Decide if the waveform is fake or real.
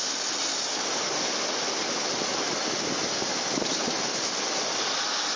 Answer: real